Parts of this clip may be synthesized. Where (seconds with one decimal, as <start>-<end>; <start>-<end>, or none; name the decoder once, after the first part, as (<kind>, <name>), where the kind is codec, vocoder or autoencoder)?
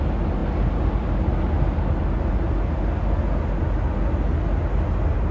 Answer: none